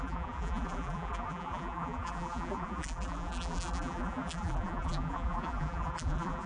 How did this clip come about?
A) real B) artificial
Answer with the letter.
B